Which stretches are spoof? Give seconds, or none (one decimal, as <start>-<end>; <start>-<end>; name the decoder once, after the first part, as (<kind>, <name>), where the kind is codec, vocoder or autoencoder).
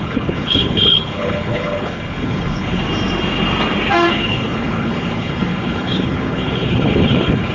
0.0-2.8 (codec, HILCodec); 4.1-7.5